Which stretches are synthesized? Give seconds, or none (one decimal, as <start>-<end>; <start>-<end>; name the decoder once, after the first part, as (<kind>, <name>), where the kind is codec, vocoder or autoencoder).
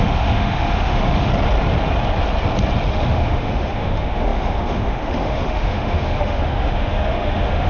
0.0-1.3 (autoencoder, DAC-VAE); 2.9-7.7